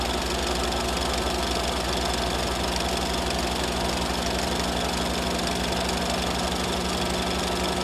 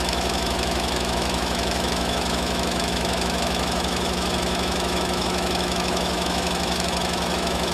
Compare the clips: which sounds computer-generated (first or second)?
second